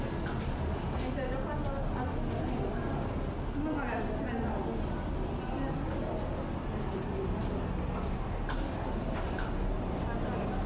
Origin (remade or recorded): recorded